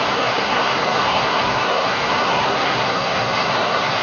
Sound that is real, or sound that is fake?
fake